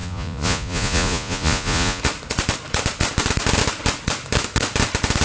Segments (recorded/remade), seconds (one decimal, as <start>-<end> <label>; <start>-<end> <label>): 0.0-2.0 remade; 2.0-5.2 recorded